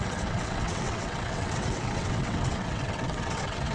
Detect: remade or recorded remade